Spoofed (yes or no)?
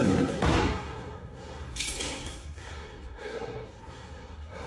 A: yes